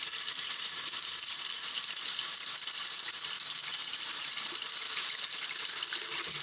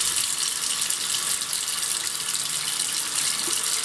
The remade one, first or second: first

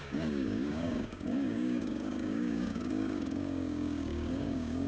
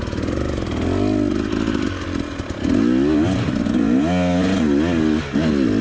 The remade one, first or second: first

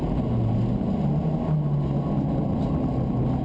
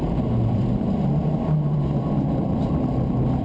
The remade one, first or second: second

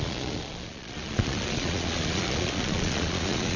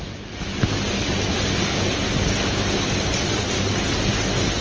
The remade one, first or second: first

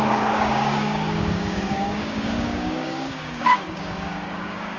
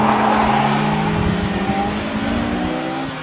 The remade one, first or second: first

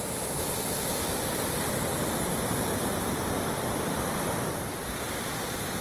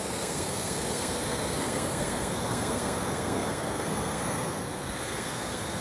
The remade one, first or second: second